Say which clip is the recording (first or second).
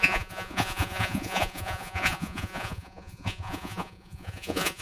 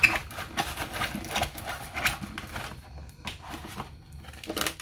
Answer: second